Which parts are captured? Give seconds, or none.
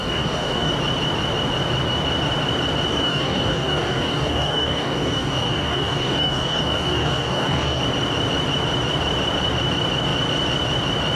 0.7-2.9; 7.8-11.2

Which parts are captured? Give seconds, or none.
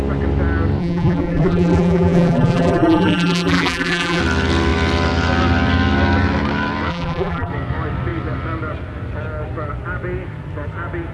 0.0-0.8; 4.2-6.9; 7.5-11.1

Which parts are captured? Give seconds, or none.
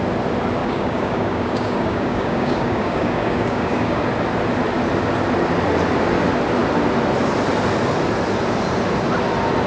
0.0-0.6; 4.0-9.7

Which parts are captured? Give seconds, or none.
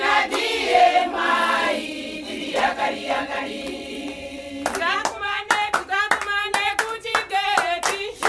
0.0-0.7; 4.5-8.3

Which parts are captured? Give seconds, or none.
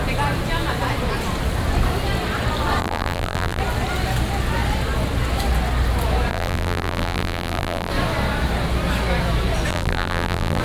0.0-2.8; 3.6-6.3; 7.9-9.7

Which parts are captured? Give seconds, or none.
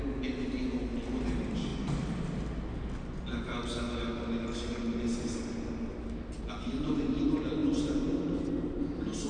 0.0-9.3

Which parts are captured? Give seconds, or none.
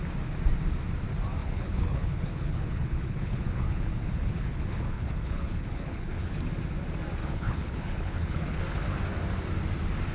0.0-1.4; 6.4-7.2; 8.6-10.1